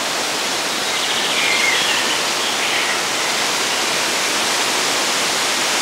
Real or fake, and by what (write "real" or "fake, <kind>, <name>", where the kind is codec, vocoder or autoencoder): real